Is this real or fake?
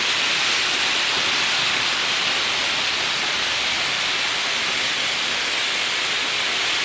real